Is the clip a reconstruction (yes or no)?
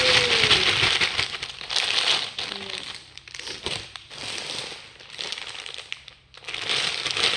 no